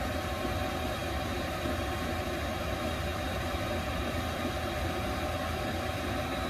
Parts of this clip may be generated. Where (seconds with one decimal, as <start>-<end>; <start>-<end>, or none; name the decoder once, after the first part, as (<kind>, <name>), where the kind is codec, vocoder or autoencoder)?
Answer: none